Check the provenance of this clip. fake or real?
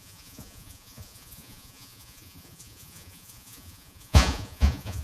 fake